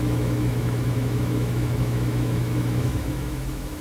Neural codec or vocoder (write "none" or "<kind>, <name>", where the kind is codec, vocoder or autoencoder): autoencoder, DAC-VAE